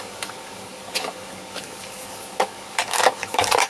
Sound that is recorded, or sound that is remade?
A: remade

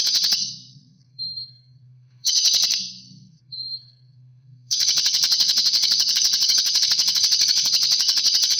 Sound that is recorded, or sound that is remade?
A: remade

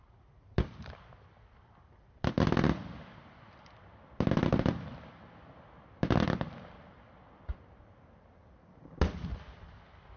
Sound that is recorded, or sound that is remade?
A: recorded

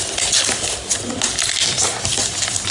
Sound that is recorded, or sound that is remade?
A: recorded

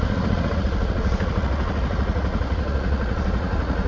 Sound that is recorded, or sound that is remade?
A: remade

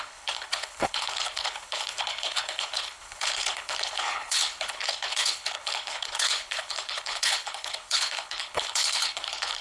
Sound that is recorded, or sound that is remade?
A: remade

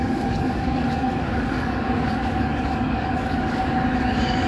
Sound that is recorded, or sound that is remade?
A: remade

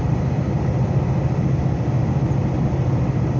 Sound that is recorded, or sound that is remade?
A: recorded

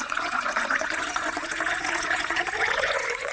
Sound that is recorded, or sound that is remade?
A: remade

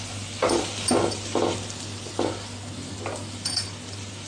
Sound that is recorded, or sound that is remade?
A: recorded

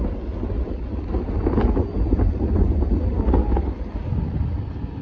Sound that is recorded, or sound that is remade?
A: recorded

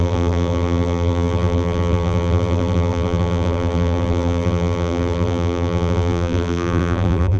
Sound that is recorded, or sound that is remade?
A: remade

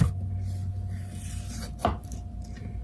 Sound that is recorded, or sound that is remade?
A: recorded